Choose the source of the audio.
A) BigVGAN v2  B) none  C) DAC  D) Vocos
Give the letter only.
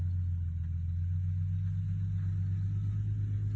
B